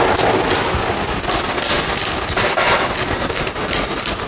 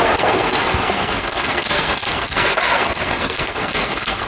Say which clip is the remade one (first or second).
second